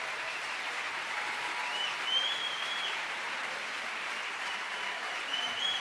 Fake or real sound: fake